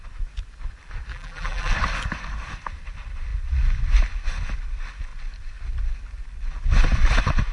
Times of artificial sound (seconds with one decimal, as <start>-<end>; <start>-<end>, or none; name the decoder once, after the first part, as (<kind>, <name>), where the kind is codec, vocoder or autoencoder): 1.1-1.7 (vocoder, BigVGAN v2)